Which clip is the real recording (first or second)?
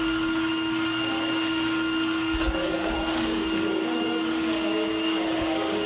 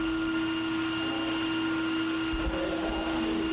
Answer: second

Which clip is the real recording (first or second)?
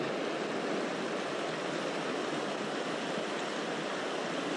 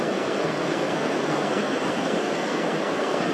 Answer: first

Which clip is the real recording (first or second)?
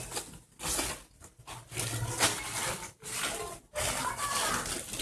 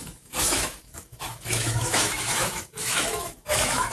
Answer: first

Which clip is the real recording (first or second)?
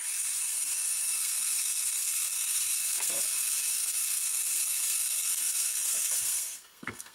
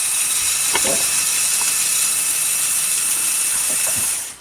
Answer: second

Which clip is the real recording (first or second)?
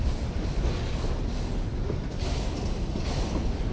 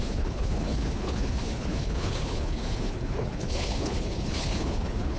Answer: first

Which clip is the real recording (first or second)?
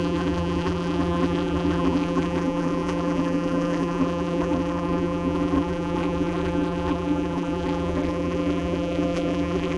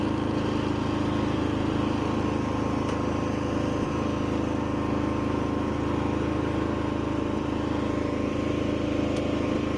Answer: second